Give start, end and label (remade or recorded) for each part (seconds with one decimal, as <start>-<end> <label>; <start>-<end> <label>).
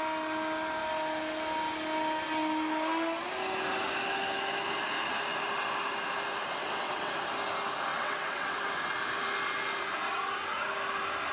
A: 0.0-6.6 recorded; 6.6-7.1 remade; 7.1-7.9 recorded; 7.9-8.6 remade; 8.6-11.3 recorded